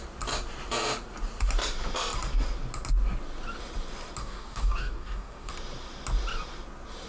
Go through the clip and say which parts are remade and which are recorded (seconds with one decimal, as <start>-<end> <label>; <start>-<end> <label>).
0.0-4.2 recorded; 4.2-5.5 remade; 5.5-7.1 recorded